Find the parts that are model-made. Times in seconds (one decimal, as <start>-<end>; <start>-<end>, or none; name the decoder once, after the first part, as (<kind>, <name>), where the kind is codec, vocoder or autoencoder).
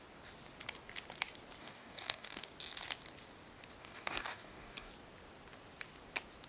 1.6-2.5 (codec, DAC); 3.8-4.9